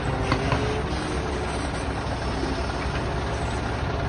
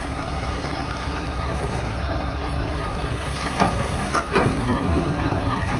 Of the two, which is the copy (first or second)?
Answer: second